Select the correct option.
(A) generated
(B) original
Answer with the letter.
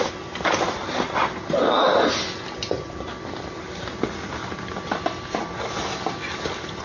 B